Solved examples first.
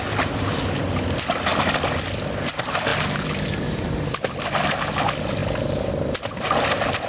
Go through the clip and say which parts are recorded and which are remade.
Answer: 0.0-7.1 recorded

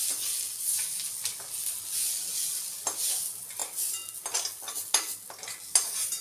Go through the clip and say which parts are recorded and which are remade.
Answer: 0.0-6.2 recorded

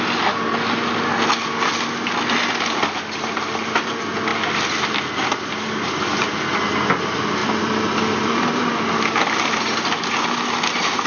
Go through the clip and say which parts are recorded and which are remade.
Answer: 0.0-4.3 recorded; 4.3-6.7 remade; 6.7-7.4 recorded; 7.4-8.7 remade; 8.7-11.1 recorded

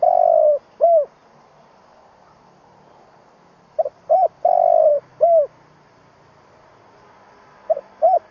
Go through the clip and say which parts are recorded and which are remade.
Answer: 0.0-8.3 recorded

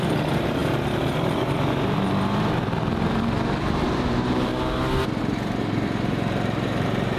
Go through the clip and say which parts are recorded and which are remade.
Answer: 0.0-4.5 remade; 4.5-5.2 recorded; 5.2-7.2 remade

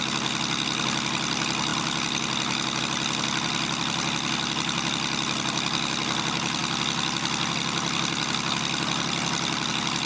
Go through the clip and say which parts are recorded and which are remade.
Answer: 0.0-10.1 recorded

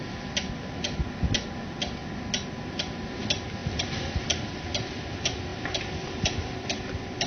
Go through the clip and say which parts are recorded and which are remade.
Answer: 0.0-3.6 recorded; 3.6-4.6 remade; 4.6-5.5 recorded; 5.5-6.5 remade; 6.5-7.3 recorded